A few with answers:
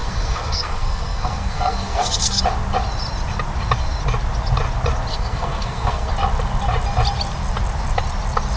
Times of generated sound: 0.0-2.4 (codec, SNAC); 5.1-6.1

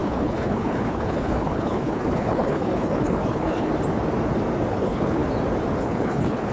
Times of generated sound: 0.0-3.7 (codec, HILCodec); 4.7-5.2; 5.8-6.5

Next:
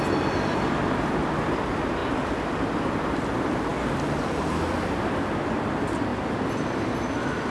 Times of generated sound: none

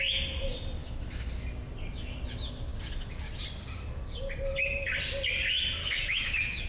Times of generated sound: 0.8-1.3 (autoencoder, DAC-VAE); 5.8-6.7

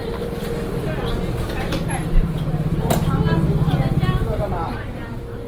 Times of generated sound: none

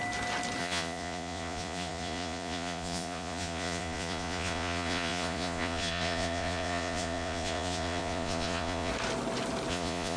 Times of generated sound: 0.6-8.9 (vocoder, Vocos); 9.7-10.2